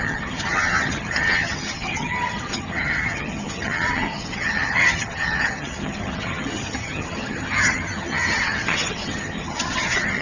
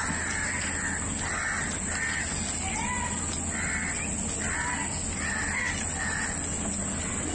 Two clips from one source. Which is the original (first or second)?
second